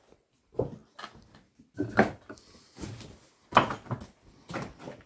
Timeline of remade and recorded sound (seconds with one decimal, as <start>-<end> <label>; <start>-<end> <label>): 0.0-5.1 recorded